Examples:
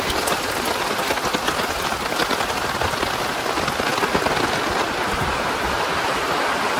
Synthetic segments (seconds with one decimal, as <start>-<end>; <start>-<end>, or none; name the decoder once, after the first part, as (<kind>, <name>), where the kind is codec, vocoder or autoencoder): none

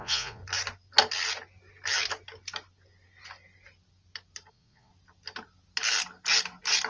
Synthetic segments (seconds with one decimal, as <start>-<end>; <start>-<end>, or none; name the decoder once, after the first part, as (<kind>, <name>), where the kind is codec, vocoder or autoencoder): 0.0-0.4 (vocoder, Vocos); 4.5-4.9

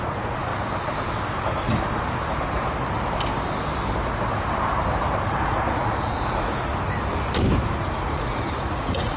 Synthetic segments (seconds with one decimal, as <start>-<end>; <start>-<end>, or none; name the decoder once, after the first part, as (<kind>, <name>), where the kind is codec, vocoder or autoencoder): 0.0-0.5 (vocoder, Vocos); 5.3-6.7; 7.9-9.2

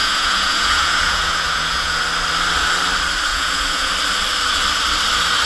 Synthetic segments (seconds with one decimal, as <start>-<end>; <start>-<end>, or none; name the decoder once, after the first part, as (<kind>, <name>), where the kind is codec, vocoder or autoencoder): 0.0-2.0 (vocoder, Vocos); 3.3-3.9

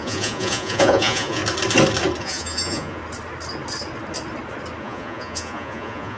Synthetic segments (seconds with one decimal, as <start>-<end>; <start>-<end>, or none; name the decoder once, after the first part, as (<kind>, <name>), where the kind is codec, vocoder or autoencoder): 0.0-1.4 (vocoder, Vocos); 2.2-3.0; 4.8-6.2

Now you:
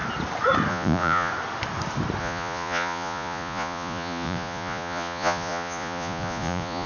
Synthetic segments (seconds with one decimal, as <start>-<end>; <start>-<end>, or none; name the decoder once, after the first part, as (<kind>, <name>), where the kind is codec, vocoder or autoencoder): 0.7-1.3 (vocoder, Vocos); 2.2-6.9